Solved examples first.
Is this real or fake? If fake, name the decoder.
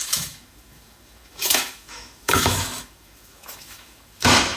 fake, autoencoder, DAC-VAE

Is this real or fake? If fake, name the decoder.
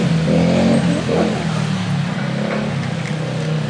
real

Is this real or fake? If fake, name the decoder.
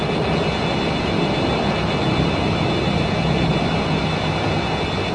real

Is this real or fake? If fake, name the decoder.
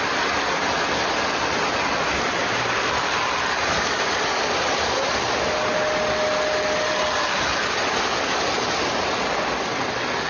real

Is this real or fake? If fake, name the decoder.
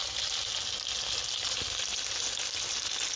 real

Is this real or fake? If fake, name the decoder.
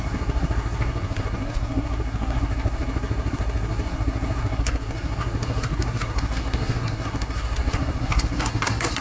fake, codec, SNAC